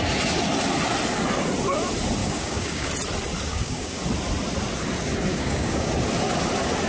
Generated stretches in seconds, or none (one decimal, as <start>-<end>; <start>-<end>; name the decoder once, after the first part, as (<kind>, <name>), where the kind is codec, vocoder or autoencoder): 2.2-2.9 (codec, DAC); 3.5-4.0; 5.3-5.9